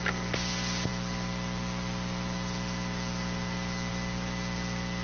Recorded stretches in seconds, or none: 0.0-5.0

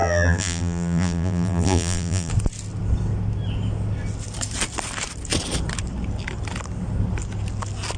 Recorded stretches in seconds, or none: 2.3-8.0

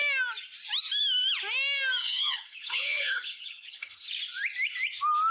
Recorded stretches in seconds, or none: 0.0-2.0; 4.1-5.3

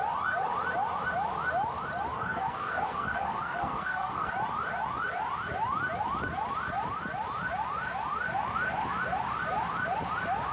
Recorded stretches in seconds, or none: 0.0-2.1; 4.3-10.5

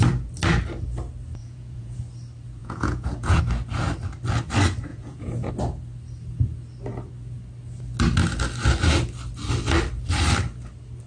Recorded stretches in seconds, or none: 0.0-1.4; 2.0-2.6; 3.4-4.9; 5.5-11.1